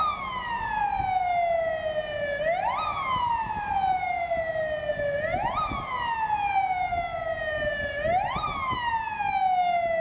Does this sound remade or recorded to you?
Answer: recorded